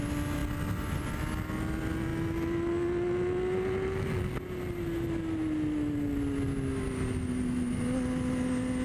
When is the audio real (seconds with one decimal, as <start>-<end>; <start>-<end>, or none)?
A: 0.0-8.8